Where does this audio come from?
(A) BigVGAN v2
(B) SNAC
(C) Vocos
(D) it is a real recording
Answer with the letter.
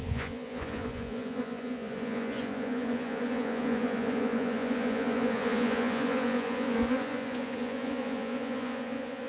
C